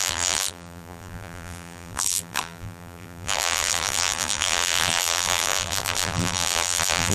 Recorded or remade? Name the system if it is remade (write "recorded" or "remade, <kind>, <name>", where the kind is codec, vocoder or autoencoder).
remade, vocoder, BigVGAN v2